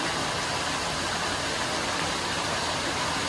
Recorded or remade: recorded